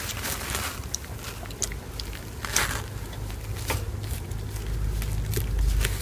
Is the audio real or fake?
real